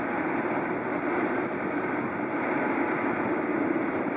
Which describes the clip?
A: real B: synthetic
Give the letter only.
A